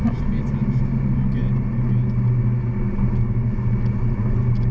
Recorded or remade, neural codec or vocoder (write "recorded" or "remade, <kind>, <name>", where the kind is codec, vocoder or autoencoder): recorded